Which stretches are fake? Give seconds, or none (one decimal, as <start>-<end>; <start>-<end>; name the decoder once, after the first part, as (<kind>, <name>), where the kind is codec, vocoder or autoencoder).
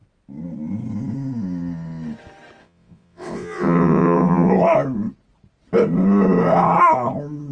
2.6-4.5 (vocoder, WaveNeXt)